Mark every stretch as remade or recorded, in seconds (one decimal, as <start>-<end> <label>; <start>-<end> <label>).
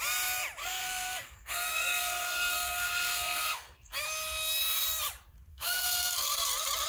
0.0-0.6 recorded; 0.6-4.0 remade; 4.0-5.5 recorded; 5.5-6.5 remade; 6.5-6.9 recorded